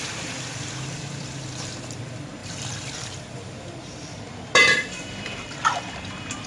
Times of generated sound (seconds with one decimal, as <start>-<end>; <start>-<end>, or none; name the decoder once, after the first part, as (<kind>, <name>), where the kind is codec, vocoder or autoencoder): 0.0-6.5 (vocoder, BigVGAN v2)